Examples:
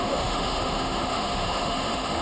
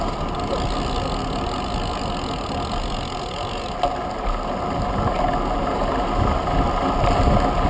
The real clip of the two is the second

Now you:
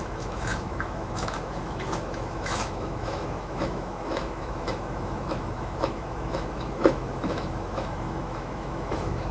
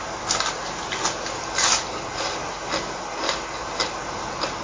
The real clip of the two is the second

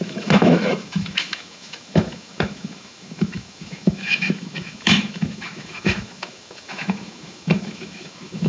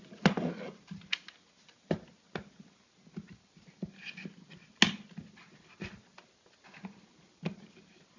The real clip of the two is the second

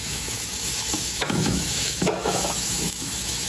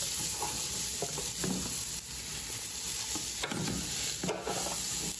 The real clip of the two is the second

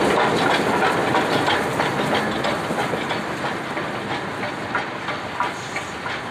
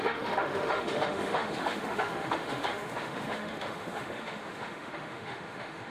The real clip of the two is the first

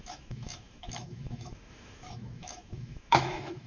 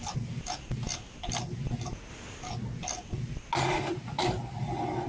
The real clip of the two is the second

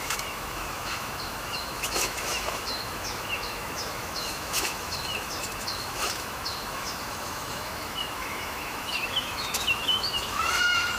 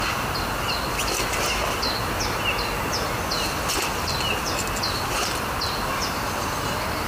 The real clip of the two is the second